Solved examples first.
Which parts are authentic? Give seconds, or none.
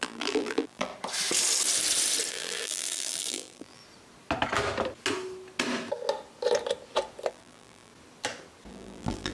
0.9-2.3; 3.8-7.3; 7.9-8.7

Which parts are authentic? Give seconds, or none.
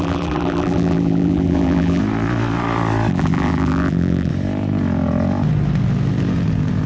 2.0-3.1; 4.3-6.9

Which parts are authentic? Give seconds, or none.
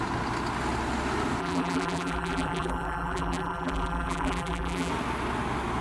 0.0-1.4; 4.9-5.8